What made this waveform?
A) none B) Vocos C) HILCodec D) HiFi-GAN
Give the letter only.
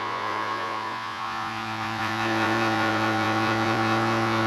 B